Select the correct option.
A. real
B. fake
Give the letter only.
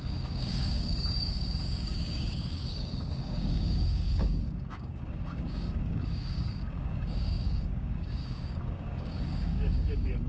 B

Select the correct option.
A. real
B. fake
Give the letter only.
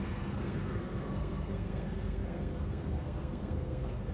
B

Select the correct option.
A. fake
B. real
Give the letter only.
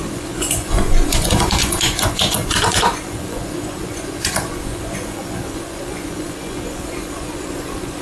A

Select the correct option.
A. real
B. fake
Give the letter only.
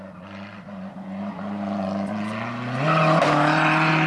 A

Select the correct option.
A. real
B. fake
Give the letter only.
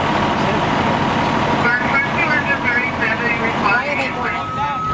A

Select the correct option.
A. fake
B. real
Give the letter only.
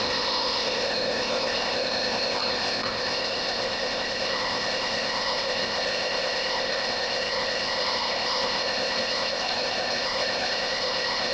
A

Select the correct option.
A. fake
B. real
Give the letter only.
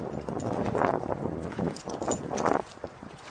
A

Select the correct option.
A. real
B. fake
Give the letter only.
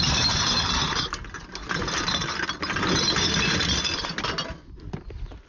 A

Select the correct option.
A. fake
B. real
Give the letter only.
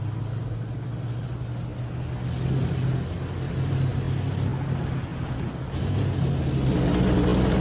B